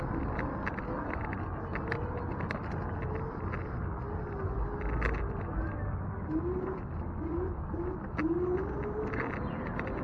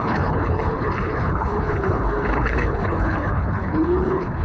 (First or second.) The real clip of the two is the first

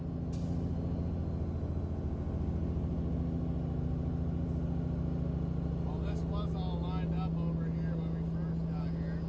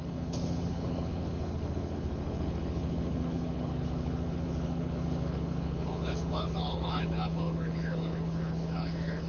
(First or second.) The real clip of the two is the first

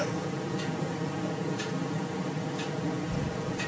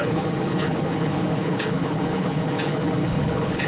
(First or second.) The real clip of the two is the first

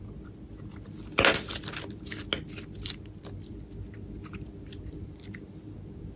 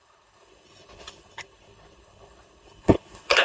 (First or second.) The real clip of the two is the first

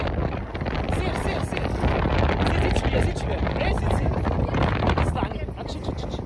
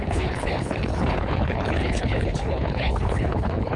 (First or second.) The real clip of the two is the first